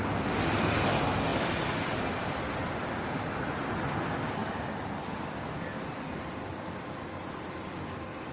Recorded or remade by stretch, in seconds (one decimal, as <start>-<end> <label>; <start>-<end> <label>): 0.0-8.3 recorded